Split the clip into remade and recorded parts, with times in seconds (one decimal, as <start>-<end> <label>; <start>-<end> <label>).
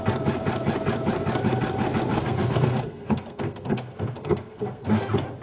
0.0-2.1 recorded; 2.1-5.0 remade; 5.0-5.4 recorded